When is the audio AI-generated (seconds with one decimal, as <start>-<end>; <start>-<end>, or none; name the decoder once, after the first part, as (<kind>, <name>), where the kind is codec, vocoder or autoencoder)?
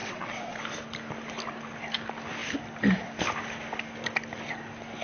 0.0-0.6 (vocoder, WaveNeXt)